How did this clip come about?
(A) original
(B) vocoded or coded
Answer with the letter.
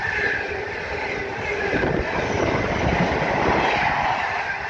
A